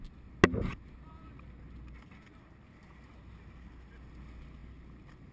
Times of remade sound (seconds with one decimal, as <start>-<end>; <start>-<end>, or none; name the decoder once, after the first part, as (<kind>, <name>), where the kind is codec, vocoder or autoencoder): none

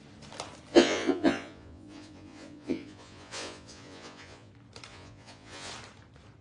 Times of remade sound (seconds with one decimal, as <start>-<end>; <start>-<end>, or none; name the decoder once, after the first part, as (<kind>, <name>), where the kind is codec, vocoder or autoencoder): 0.7-4.5 (vocoder, Vocos); 4.9-5.7

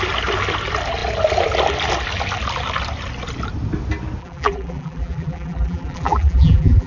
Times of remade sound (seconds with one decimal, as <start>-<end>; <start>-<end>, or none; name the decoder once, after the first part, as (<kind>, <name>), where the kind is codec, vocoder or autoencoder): 4.2-6.9 (vocoder, BigVGAN v2)

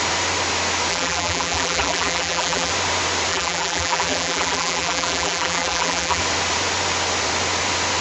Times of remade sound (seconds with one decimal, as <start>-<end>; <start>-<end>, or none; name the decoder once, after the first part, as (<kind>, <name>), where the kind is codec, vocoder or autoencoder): 0.9-2.7 (vocoder, BigVGAN v2); 3.3-6.2

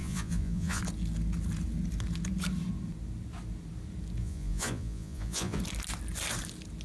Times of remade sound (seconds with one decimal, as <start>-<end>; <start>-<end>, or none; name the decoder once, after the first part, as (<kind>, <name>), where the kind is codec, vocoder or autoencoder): 0.0-0.8 (vocoder, Vocos); 4.2-5.6

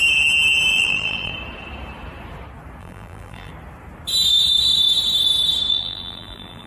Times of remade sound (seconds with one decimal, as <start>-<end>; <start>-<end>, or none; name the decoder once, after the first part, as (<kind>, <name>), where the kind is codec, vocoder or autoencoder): 0.7-1.3 (vocoder, BigVGAN v2); 2.8-3.5; 5.7-6.7

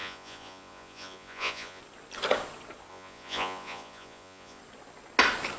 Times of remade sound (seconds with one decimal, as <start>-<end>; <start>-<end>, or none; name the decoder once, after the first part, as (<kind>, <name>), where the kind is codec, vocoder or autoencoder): 0.0-1.8 (vocoder, Vocos); 2.9-4.6